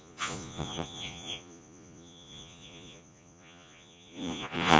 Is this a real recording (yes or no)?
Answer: no